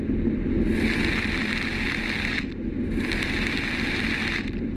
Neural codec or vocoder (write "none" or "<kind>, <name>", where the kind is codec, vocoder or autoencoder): none